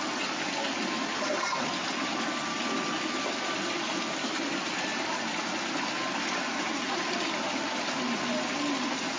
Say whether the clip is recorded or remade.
recorded